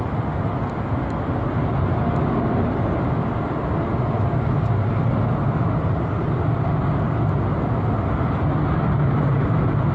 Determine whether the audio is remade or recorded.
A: recorded